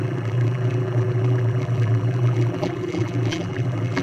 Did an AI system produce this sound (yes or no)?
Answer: yes